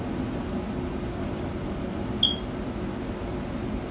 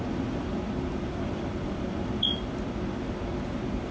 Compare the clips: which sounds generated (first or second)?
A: second